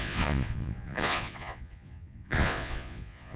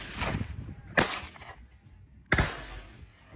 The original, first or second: second